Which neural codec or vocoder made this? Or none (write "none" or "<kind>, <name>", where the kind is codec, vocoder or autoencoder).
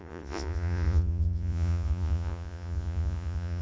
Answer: vocoder, Vocos